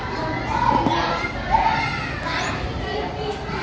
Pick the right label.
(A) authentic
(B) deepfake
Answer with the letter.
A